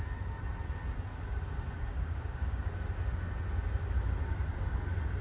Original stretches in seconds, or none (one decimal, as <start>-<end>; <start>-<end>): 0.0-1.9; 2.7-5.2